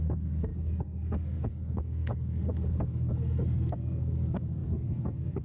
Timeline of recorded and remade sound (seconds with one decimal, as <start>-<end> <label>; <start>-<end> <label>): 0.0-5.4 remade